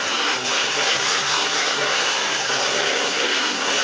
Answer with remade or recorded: remade